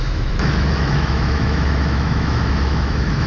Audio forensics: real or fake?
fake